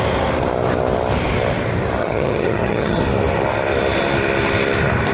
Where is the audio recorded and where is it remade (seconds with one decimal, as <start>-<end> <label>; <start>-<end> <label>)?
0.0-2.0 recorded; 2.0-3.0 remade; 3.0-5.1 recorded